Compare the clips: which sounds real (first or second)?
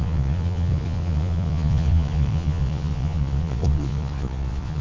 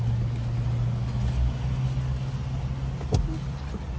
second